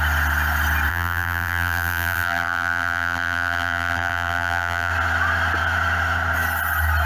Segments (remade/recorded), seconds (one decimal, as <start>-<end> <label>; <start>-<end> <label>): 0.0-0.9 recorded; 0.9-4.9 remade; 4.9-7.1 recorded